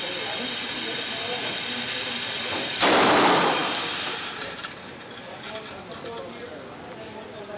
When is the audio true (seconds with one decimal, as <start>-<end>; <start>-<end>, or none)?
0.0-7.6